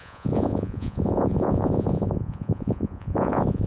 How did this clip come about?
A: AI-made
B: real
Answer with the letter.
A